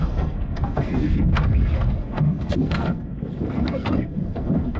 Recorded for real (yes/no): no